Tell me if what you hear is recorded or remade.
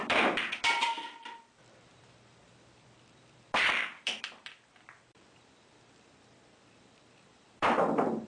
remade